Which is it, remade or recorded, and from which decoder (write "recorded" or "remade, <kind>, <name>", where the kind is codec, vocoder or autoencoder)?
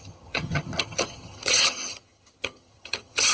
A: remade, vocoder, HiFi-GAN